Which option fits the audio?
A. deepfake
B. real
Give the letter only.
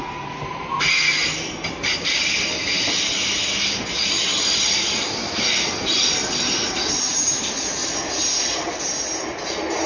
B